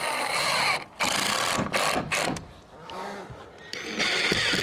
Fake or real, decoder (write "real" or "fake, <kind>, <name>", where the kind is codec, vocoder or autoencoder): real